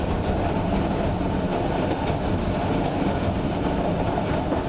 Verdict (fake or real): real